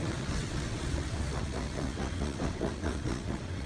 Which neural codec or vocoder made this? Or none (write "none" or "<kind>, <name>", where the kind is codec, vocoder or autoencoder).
vocoder, WaveNeXt